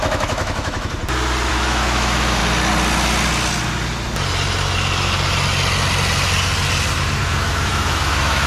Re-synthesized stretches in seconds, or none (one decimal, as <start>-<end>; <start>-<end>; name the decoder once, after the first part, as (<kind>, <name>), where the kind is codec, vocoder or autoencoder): 0.0-1.0 (autoencoder, DAC-VAE); 1.5-2.4; 7.2-8.5